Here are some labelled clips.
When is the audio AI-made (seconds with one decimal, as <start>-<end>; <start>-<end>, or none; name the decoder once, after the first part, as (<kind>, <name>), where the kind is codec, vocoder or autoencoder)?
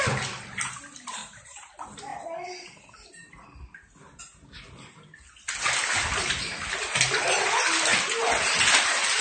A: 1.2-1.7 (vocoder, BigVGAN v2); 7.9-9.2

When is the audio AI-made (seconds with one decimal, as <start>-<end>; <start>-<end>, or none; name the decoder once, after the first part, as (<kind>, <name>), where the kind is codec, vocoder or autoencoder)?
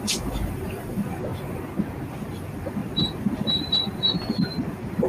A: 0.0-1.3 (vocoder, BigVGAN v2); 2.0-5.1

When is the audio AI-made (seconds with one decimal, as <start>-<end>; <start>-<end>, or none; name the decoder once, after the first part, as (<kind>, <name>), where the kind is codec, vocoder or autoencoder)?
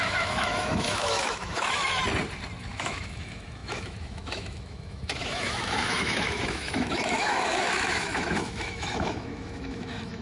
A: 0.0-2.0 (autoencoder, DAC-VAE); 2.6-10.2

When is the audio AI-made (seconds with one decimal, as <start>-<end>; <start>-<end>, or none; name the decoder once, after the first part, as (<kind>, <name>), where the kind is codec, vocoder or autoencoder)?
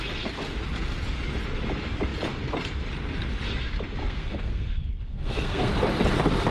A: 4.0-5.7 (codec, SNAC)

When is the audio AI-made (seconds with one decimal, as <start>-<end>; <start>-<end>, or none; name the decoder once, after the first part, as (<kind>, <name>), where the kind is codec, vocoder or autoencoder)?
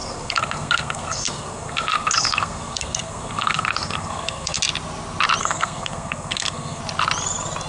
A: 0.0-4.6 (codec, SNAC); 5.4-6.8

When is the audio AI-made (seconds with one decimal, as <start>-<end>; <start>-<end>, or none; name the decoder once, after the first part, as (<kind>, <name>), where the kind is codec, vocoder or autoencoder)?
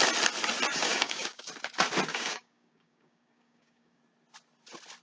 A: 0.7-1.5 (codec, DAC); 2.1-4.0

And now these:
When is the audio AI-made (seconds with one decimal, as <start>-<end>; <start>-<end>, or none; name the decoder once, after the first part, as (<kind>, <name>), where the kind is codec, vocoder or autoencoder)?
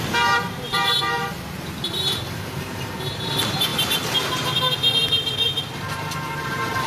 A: 0.0-6.9 (vocoder, BigVGAN v2)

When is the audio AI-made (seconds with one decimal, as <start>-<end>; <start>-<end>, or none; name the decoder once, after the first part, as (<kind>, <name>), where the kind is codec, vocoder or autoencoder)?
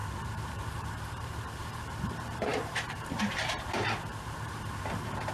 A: 0.0-5.3 (vocoder, BigVGAN v2)